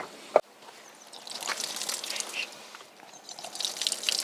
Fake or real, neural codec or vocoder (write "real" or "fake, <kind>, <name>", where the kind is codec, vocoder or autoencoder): real